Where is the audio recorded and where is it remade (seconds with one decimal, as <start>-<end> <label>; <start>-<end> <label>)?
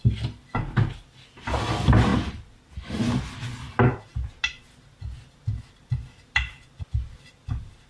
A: 0.0-2.1 recorded; 2.1-2.8 remade; 2.8-7.9 recorded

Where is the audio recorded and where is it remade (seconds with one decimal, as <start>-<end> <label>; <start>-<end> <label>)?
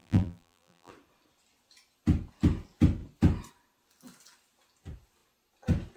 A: 0.0-0.9 remade; 0.9-6.0 recorded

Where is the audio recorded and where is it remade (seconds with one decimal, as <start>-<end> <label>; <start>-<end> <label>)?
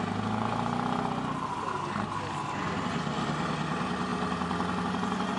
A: 0.0-5.4 recorded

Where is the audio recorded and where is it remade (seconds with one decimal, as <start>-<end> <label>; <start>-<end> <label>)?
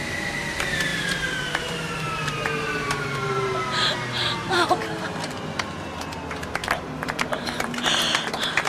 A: 0.0-0.9 recorded; 0.9-4.8 remade; 4.8-6.6 recorded; 6.6-7.9 remade; 7.9-8.7 recorded